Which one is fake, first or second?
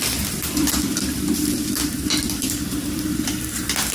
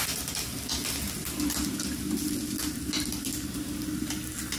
first